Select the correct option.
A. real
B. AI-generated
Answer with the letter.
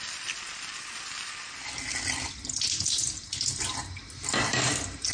A